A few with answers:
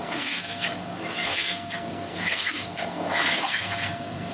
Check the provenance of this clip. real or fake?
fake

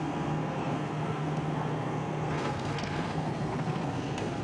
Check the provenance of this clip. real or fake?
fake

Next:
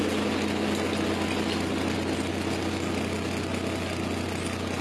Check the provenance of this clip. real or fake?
real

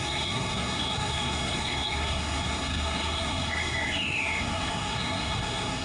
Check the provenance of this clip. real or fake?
fake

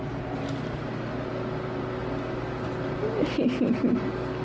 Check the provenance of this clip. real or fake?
real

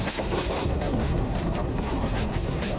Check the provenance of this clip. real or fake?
fake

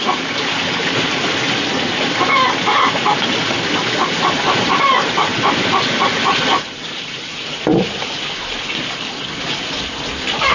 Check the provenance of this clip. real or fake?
real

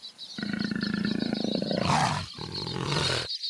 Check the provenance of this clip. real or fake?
real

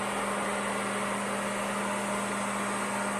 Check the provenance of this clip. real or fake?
real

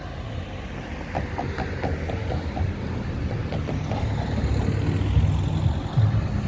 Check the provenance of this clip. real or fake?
real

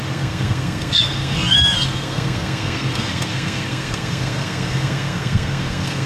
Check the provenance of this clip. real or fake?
fake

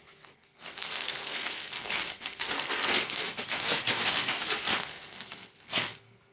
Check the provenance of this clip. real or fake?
fake